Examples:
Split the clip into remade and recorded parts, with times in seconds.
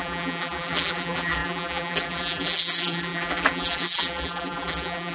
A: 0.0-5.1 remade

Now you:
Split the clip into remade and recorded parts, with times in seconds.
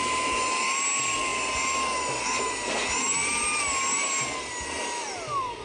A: 0.0-5.6 recorded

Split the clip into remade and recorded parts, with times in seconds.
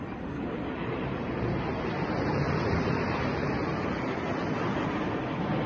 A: 0.0-0.8 recorded; 0.8-4.2 remade; 4.2-5.7 recorded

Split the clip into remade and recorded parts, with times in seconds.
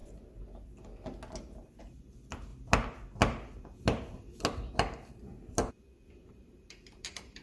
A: 0.0-1.8 recorded; 1.8-2.5 remade; 2.5-6.3 recorded; 6.3-7.4 remade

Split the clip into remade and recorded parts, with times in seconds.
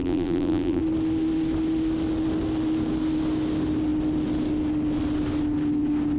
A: 0.0-0.8 remade; 0.8-6.2 recorded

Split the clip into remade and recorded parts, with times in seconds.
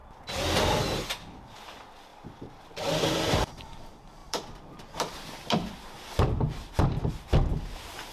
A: 0.0-2.1 recorded; 2.1-3.6 remade; 3.6-4.2 recorded; 4.2-7.1 remade; 7.1-8.1 recorded